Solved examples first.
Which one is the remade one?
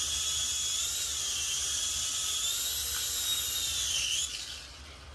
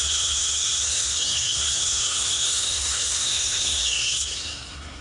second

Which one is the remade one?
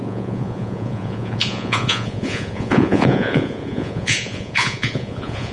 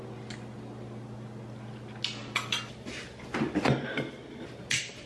first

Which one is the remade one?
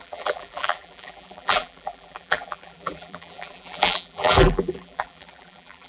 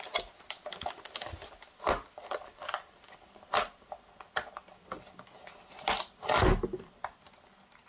first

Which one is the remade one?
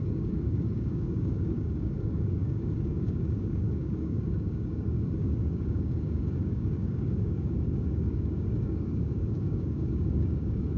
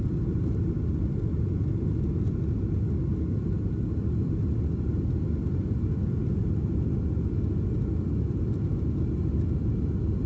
first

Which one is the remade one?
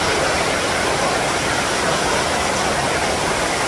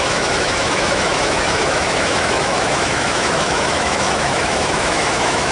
second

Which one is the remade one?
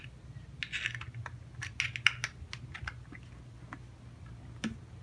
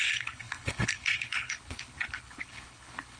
second